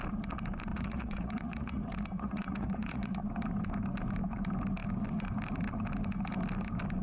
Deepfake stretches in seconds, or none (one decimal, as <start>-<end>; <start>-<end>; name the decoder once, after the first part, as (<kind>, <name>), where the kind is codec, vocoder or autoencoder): 0.7-3.2 (vocoder, Vocos)